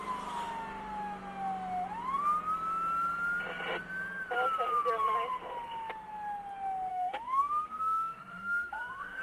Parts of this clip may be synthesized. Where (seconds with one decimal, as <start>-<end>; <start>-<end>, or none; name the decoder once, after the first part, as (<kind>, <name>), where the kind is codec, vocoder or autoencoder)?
6.9-9.2 (autoencoder, DAC-VAE)